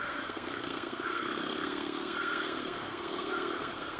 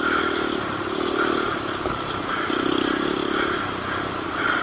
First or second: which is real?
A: second